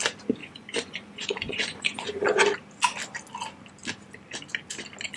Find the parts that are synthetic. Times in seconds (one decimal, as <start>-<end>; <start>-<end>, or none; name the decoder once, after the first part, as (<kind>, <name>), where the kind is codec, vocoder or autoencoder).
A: 0.4-2.4 (vocoder, Vocos)